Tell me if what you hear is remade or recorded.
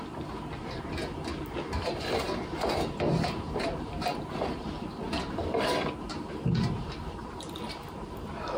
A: recorded